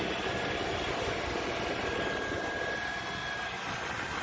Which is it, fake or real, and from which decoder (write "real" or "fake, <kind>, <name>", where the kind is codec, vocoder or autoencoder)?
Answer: real